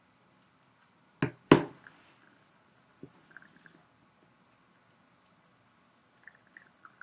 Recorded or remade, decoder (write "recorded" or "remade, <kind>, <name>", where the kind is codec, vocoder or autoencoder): recorded